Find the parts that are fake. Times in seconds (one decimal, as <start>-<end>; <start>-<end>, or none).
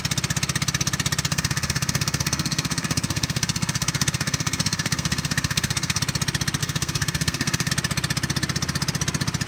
1.3-6.0; 6.6-7.7